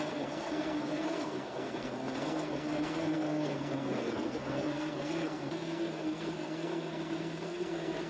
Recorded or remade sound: remade